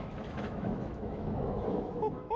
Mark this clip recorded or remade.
remade